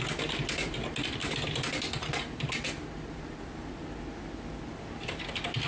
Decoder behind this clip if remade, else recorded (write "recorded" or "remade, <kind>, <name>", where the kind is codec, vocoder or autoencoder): recorded